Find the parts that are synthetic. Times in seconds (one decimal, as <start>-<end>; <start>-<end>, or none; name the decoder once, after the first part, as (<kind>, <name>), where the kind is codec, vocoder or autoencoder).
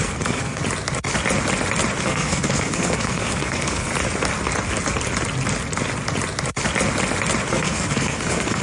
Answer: 0.0-0.6 (codec, SNAC); 2.0-3.9; 7.5-8.6